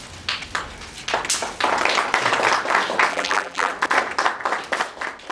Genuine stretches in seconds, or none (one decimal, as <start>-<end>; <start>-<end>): 0.0-3.1; 3.7-5.3